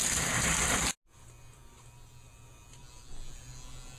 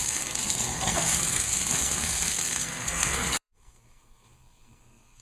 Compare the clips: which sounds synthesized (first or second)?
second